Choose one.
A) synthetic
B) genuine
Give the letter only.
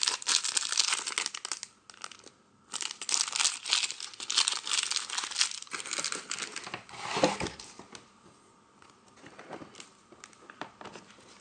B